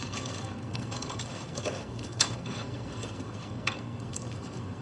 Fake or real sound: fake